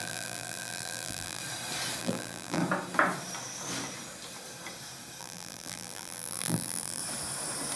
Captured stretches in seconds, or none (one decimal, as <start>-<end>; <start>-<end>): 1.4-2.0; 2.6-5.2; 7.0-7.8